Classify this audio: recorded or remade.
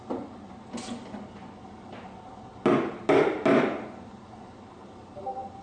recorded